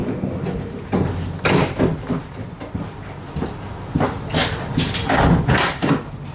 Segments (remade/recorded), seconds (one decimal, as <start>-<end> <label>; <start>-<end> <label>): 0.0-6.3 recorded

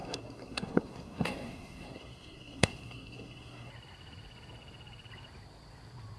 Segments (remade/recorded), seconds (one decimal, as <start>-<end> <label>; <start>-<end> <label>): 0.0-3.7 remade; 3.7-6.2 recorded

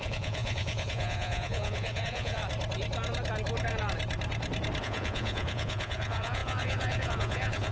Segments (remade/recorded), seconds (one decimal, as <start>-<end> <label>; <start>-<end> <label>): 0.0-2.4 remade; 2.4-4.8 recorded; 4.8-7.7 remade

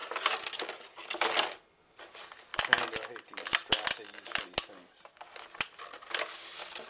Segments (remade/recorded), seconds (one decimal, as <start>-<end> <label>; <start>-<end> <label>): 0.0-6.9 recorded

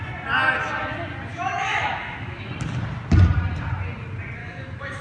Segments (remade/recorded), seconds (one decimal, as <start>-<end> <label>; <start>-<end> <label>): 0.0-1.3 recorded; 1.3-2.5 remade; 2.5-4.4 recorded; 4.4-5.0 remade

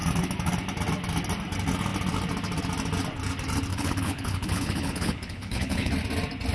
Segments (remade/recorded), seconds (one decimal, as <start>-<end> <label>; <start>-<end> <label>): 0.0-3.7 recorded; 3.7-5.9 remade; 5.9-6.5 recorded

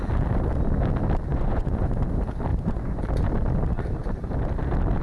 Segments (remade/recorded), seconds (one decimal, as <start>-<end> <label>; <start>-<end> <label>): 0.0-1.3 recorded; 1.3-1.9 remade; 1.9-2.5 recorded; 2.5-3.1 remade; 3.1-5.0 recorded

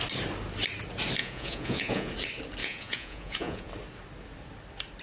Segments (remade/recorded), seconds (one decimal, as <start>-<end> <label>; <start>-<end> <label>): 0.0-1.2 recorded; 1.2-2.1 remade; 2.1-2.6 recorded; 2.6-3.7 remade; 3.7-5.0 recorded